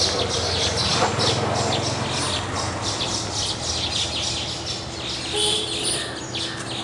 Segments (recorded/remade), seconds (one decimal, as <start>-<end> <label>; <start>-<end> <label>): 0.0-6.8 recorded